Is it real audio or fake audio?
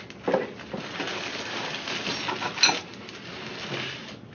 real